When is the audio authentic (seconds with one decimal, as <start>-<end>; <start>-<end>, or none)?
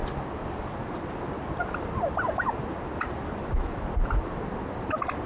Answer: 0.0-5.3